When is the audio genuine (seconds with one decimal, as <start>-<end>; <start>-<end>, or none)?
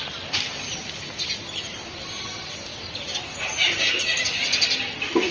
0.0-5.3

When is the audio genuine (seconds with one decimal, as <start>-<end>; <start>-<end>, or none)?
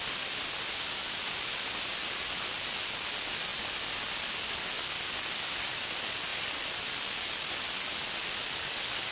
0.0-9.1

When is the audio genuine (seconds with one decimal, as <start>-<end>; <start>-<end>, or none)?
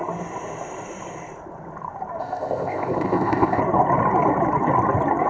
0.0-2.2; 3.6-5.3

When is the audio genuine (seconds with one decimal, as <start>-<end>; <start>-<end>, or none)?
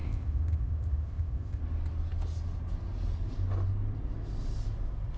1.6-5.2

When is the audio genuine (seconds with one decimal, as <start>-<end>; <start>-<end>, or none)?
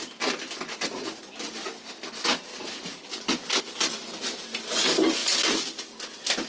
0.0-6.5